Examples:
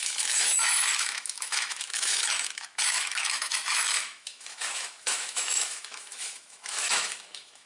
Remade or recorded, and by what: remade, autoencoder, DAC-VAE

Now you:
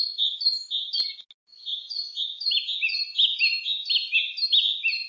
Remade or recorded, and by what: recorded